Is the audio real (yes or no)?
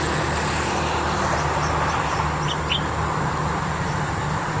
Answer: yes